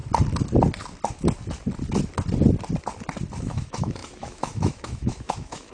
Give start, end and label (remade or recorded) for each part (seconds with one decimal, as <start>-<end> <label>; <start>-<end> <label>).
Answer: 0.0-3.4 recorded; 3.4-5.7 remade